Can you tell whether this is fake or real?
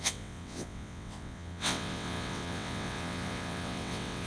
fake